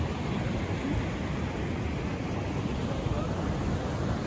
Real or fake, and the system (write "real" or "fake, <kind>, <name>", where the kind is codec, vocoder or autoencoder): real